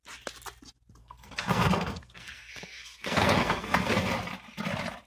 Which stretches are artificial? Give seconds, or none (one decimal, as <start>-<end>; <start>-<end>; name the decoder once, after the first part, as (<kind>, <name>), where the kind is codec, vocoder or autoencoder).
1.0-4.1 (codec, SNAC)